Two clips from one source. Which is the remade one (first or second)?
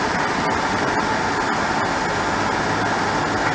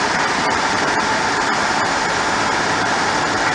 second